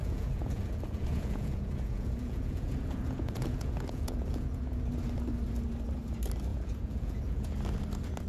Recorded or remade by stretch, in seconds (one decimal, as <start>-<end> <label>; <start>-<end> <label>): 0.0-4.8 remade; 4.8-6.5 recorded; 6.5-7.6 remade; 7.6-8.3 recorded